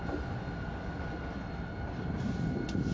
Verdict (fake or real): real